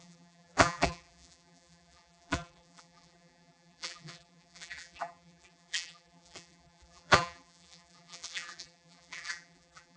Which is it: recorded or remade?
remade